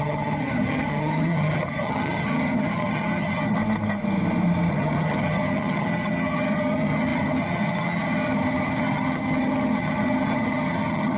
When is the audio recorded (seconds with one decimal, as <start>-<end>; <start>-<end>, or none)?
3.6-4.7